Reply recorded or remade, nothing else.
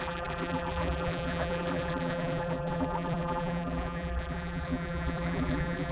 remade